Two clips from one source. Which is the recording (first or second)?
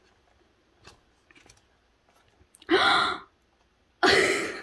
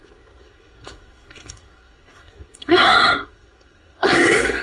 first